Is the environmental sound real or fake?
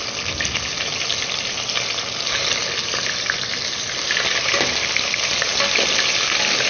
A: real